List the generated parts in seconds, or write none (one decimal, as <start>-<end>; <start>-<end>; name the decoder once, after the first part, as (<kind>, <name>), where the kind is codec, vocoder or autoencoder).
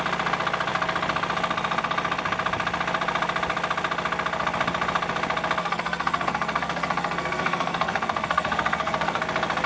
5.6-9.2 (codec, SNAC)